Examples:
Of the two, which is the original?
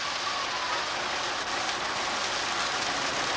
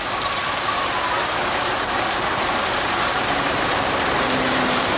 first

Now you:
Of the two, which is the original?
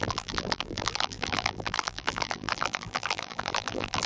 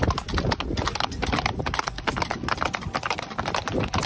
second